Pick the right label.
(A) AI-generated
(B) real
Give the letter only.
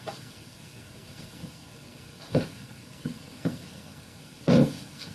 A